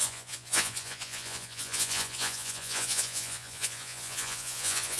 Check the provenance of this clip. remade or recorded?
remade